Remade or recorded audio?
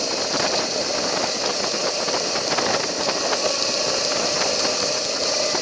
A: remade